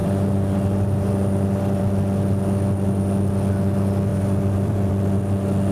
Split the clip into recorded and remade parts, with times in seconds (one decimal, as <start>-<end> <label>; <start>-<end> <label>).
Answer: 0.0-1.8 remade; 1.8-4.1 recorded; 4.1-4.9 remade; 4.9-5.7 recorded